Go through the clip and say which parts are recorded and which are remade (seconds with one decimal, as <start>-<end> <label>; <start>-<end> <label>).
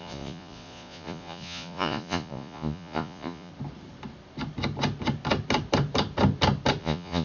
0.0-3.5 remade; 3.5-6.8 recorded; 6.8-7.2 remade